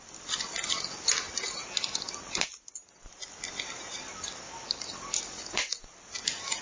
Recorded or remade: recorded